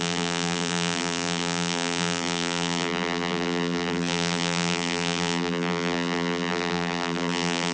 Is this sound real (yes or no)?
no